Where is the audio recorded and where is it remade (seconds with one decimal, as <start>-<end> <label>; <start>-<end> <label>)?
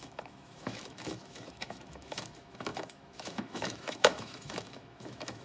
0.0-5.4 remade